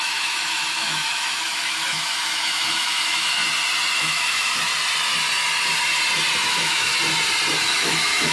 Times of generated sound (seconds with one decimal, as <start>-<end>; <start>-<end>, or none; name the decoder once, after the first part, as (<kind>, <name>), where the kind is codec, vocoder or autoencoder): 0.0-3.4 (autoencoder, DAC-VAE); 4.0-4.7; 6.5-6.9; 7.6-8.3

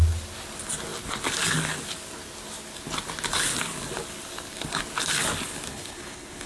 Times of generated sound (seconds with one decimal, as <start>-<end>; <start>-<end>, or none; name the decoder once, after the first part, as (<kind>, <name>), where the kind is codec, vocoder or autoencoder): 5.7-6.5 (codec, HILCodec)

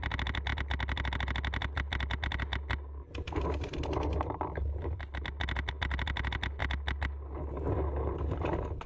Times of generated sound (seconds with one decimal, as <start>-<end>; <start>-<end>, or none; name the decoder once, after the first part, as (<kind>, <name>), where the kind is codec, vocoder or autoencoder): none

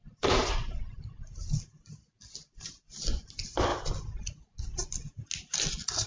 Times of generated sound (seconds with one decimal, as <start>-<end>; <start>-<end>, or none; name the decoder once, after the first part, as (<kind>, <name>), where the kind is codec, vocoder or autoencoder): none

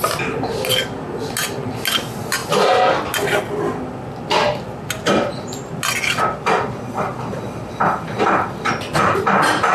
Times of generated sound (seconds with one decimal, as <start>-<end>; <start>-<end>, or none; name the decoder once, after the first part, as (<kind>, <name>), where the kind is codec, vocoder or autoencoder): 7.1-8.7 (vocoder, BigVGAN v2)

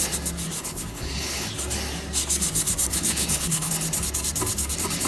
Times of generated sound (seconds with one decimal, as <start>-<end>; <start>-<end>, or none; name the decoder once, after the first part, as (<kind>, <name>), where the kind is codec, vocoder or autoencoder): 0.6-1.5 (codec, HILCodec); 2.9-3.7

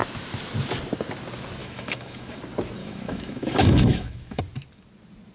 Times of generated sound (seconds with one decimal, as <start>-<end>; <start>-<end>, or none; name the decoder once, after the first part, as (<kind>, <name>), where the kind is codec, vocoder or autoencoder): 1.6-2.4 (autoencoder, DAC-VAE); 2.8-4.4